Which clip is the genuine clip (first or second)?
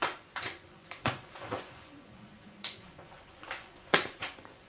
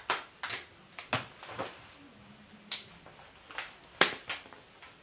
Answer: second